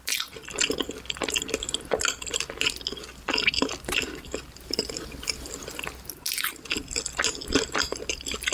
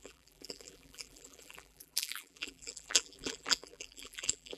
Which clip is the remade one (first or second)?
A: second